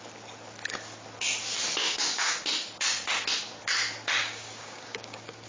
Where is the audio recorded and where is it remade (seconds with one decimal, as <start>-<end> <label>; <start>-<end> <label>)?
0.0-1.8 recorded; 1.8-2.4 remade; 2.4-4.2 recorded; 4.2-5.5 remade